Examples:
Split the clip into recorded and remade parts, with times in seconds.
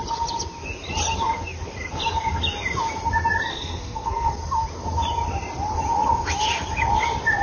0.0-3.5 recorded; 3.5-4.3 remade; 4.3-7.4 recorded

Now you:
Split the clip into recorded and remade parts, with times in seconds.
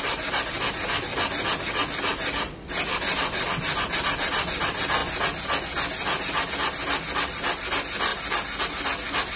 0.0-9.4 recorded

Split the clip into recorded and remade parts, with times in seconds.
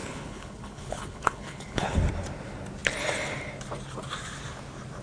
0.0-2.0 remade; 2.0-5.0 recorded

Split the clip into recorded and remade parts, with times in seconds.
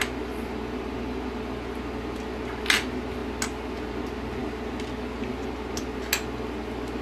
0.0-7.0 recorded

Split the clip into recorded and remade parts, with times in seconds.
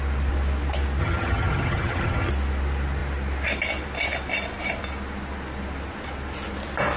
0.0-1.0 recorded; 1.0-2.3 remade; 2.3-7.0 recorded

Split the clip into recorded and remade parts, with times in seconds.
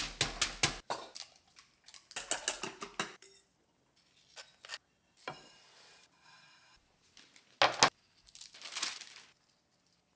0.0-10.2 recorded